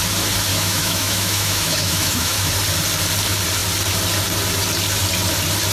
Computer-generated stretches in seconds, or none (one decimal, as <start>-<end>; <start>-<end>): 0.5-2.5

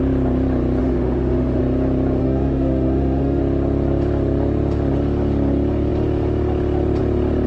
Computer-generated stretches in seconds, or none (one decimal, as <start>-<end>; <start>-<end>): 0.8-1.6; 2.2-3.4

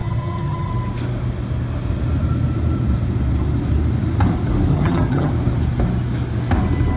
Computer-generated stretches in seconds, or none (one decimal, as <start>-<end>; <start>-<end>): 0.0-0.7; 4.7-5.3

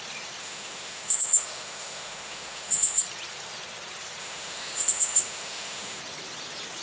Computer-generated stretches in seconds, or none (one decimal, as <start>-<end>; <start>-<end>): 0.4-3.0; 4.2-6.0

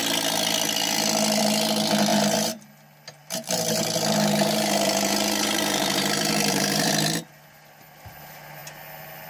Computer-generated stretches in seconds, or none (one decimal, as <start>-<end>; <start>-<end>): 2.1-2.7; 3.2-6.9

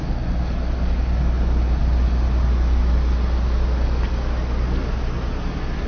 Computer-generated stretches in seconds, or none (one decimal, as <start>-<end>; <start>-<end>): none

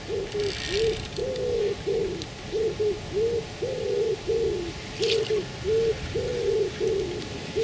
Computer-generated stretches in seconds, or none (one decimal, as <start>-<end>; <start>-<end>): none

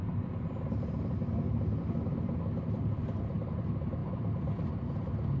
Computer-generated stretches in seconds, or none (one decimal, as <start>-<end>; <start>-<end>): none